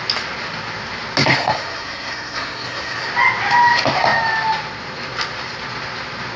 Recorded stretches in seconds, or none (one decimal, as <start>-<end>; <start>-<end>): 0.0-1.3; 3.1-6.4